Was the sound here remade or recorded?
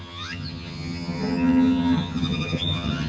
remade